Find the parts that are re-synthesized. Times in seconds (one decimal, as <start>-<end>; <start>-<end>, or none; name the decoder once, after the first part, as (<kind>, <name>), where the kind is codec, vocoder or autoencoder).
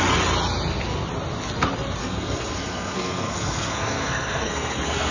2.0-5.1 (codec, SNAC)